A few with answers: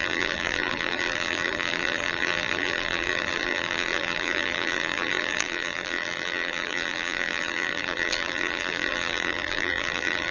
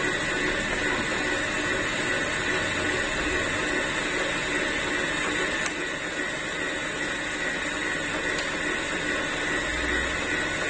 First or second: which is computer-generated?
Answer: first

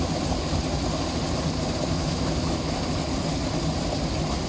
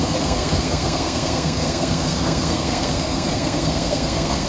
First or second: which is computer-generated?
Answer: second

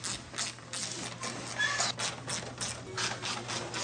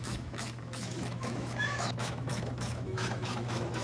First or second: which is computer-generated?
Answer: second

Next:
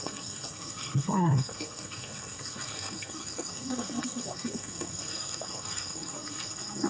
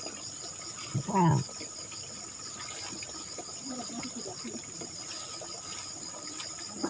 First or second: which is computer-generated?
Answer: first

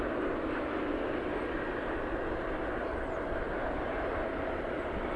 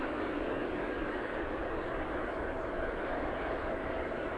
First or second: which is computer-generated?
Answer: second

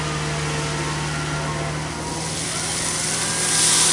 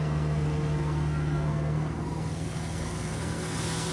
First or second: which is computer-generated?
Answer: second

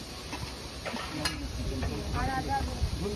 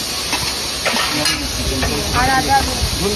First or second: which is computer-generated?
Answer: first